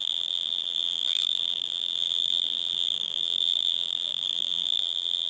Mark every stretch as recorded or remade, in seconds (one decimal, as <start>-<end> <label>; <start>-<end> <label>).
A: 0.0-5.3 remade